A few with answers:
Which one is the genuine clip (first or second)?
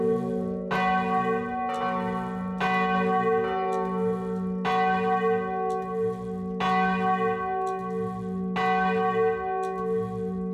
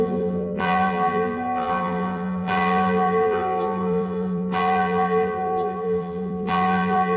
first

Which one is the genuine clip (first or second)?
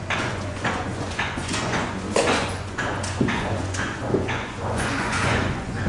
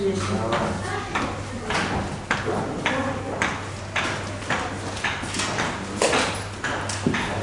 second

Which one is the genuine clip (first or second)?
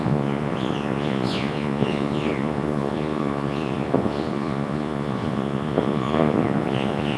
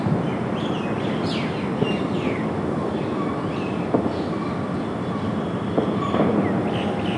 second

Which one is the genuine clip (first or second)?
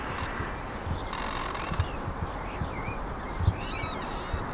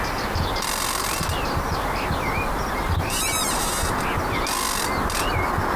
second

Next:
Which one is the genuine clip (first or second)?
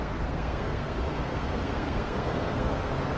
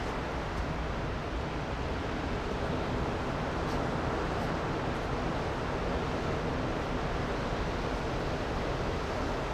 second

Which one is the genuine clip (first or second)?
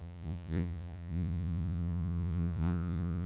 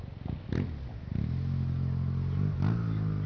second